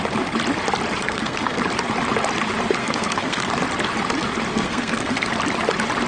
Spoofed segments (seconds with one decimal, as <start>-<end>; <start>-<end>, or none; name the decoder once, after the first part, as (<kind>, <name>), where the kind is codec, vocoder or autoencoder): 1.0-1.6 (codec, SNAC); 2.8-3.5; 4.5-5.3